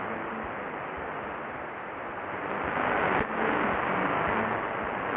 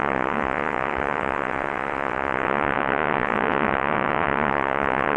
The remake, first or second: second